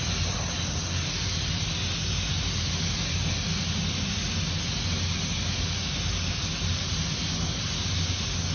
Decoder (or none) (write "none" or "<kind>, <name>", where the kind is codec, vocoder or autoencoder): none